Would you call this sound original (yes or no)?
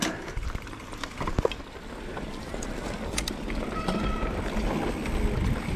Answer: yes